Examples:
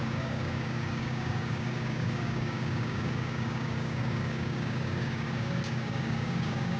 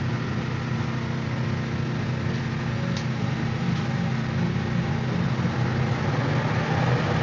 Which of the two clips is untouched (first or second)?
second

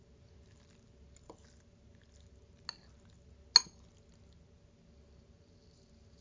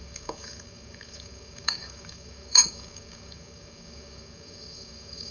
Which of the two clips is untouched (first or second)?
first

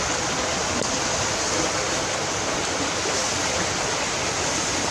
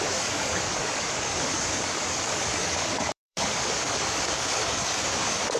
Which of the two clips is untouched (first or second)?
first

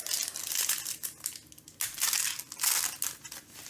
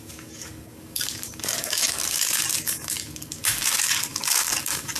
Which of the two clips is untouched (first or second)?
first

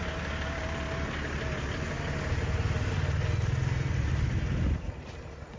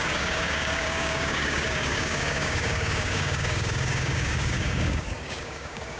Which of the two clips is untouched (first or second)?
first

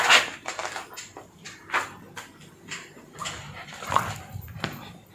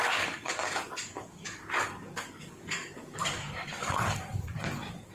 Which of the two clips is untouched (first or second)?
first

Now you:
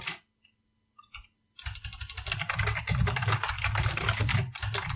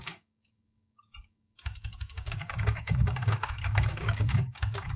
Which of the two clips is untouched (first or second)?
first